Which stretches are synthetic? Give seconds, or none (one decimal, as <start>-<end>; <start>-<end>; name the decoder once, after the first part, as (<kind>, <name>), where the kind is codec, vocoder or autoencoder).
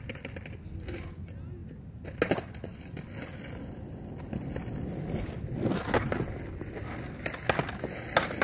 none